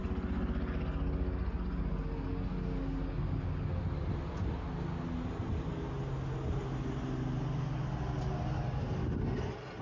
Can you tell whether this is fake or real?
real